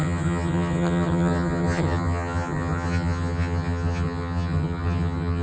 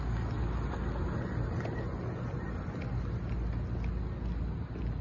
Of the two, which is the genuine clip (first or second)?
second